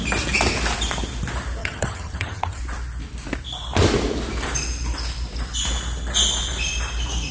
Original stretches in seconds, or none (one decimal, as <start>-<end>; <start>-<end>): 0.0-1.6; 2.6-7.3